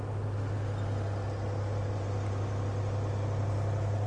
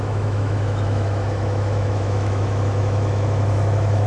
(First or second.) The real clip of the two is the first